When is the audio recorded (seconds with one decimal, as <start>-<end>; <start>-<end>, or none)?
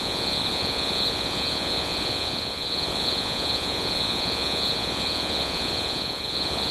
none